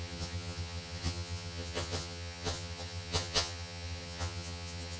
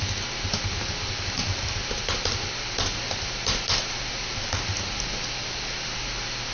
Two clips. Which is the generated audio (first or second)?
first